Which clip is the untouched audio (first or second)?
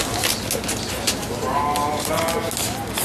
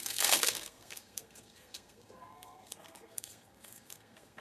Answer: first